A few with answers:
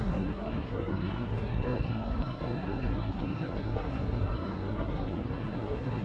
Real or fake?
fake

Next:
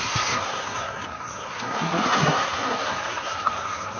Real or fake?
fake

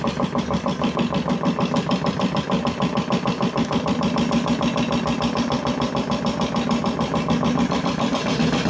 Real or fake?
real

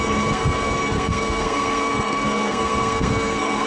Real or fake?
fake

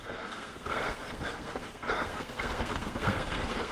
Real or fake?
fake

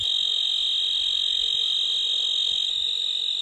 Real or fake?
real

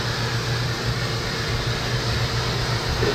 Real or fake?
real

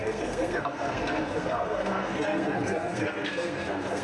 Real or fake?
fake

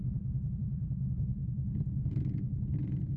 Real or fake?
real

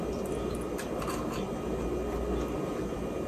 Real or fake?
real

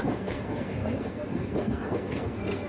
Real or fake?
fake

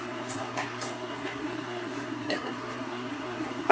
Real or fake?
fake